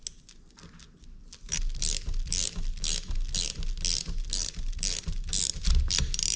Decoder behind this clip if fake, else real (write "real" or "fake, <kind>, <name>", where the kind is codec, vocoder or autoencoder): real